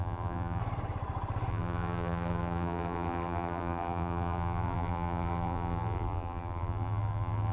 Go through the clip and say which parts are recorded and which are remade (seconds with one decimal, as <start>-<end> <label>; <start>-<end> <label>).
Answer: 0.0-0.6 remade; 0.6-1.5 recorded; 1.5-7.5 remade